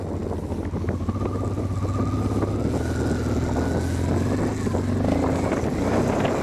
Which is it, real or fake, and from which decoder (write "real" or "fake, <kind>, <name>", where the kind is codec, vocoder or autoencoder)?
real